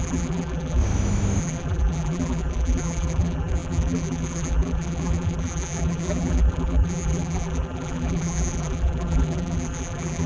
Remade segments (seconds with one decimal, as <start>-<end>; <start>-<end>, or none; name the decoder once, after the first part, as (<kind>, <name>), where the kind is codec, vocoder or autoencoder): 0.0-0.8 (vocoder, BigVGAN v2); 1.4-10.3